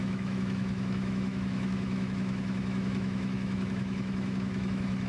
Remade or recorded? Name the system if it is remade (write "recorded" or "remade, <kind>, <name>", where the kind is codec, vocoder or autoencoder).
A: remade, autoencoder, DAC-VAE